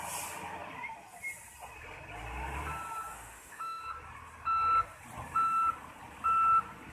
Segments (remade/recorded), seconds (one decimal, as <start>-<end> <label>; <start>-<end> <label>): 0.0-3.1 recorded; 3.1-3.8 remade; 3.8-6.9 recorded